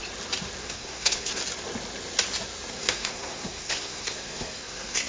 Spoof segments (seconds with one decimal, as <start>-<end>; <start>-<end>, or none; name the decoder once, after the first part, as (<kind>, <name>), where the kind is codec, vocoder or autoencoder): 0.6-1.4 (codec, SNAC); 2.7-5.1